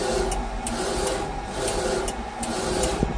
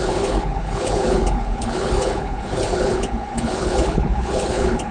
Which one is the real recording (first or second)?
first